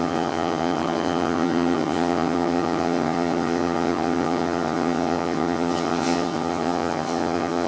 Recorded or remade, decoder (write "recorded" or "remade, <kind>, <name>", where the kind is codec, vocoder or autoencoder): remade, vocoder, HiFi-GAN